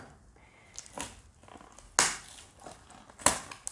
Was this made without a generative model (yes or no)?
yes